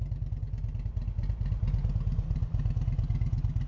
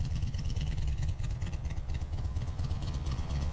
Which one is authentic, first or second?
first